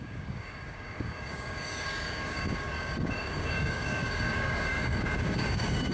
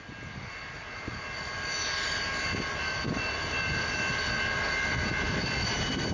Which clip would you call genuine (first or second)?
second